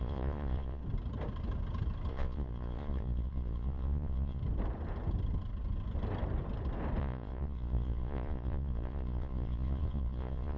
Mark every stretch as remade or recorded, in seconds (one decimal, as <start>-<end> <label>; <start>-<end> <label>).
0.0-0.8 remade; 0.8-2.1 recorded; 2.1-4.4 remade; 4.4-7.0 recorded; 7.0-10.6 remade